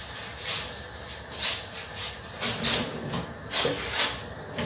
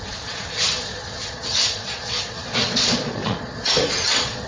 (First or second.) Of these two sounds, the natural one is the first